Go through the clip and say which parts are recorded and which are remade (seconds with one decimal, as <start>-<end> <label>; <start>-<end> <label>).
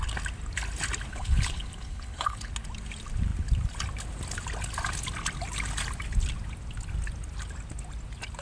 0.0-1.1 recorded; 1.1-2.5 remade; 2.5-8.4 recorded